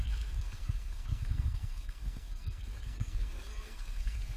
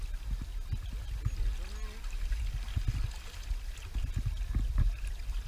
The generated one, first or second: first